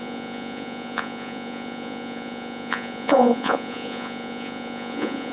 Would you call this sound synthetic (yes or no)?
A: yes